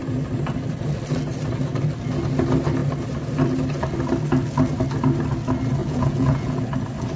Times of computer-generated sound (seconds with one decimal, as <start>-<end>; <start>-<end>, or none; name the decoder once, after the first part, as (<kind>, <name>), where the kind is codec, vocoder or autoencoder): 5.8-6.6 (vocoder, Vocos)